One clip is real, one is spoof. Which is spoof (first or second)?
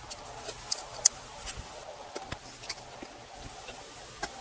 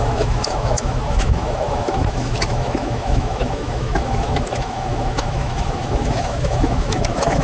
second